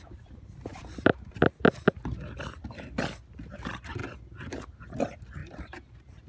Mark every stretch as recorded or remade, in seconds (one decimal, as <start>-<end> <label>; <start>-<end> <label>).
0.0-0.7 recorded; 0.7-1.3 remade; 1.3-5.4 recorded; 5.4-6.3 remade